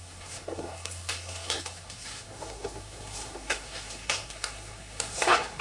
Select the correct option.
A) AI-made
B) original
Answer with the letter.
A